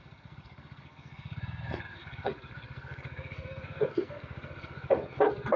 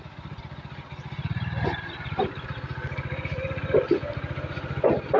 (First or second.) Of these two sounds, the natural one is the second